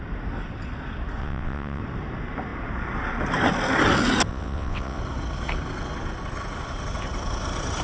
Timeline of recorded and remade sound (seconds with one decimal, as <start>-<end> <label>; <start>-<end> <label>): 0.0-1.2 recorded; 1.2-1.8 remade; 1.8-4.3 recorded; 4.3-5.0 remade; 5.0-7.8 recorded